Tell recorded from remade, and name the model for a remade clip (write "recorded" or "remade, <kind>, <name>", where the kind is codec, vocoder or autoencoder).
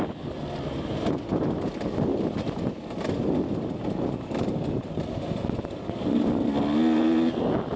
recorded